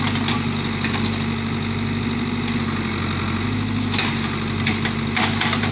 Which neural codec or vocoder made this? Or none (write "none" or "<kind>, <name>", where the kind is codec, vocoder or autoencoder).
none